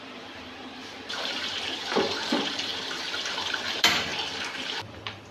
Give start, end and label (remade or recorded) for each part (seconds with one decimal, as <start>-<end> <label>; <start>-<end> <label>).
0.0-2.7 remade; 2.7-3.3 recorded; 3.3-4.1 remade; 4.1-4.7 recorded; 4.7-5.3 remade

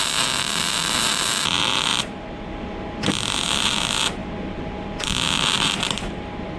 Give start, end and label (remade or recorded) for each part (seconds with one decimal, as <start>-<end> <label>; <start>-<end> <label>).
0.0-6.6 recorded

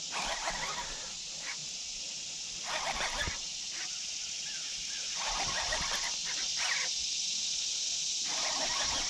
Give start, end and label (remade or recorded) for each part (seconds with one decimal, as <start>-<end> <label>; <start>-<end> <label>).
0.0-9.1 recorded

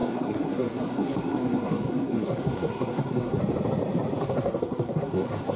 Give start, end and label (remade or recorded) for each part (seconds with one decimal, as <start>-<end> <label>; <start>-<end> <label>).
0.0-3.4 remade; 3.4-4.2 recorded; 4.2-5.6 remade

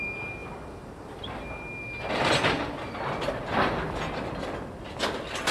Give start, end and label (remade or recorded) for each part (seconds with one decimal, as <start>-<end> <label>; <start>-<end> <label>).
0.0-5.5 recorded